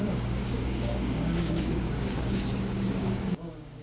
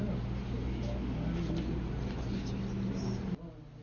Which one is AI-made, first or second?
first